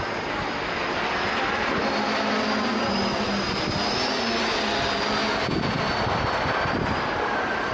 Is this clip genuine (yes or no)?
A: yes